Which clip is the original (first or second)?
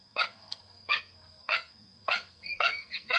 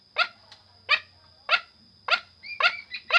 second